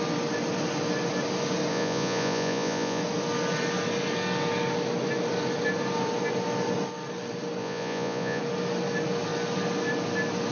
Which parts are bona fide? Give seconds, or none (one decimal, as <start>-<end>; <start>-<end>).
0.0-1.7; 3.0-7.6; 8.4-10.5